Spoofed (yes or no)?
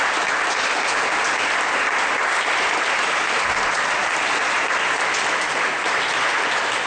no